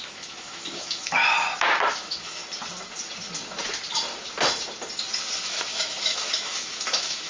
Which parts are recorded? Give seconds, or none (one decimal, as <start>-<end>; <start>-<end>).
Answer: 1.1-1.9; 2.4-5.4